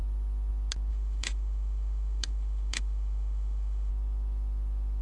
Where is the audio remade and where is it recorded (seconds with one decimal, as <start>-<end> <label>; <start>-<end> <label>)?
0.0-0.9 recorded; 0.9-3.9 remade; 3.9-5.0 recorded